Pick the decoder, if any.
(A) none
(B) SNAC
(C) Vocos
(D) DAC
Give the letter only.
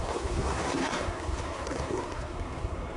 B